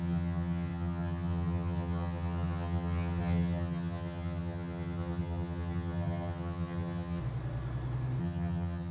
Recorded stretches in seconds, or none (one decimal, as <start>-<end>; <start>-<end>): 7.2-8.2